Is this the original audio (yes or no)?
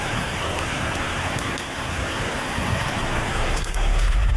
no